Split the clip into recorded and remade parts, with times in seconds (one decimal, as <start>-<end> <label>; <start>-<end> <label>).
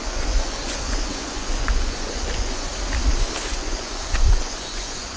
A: 0.0-2.7 remade; 2.7-3.5 recorded; 3.5-5.2 remade